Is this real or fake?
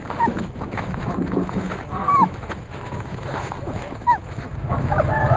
fake